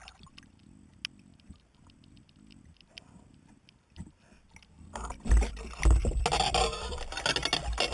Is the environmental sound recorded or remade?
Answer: recorded